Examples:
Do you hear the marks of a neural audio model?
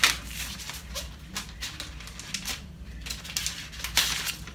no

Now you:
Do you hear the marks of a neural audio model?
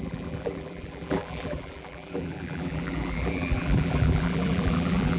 yes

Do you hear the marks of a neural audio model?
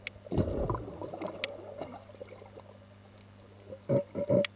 no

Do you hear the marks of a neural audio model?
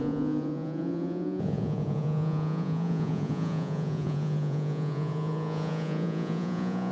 yes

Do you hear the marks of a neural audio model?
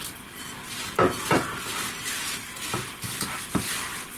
no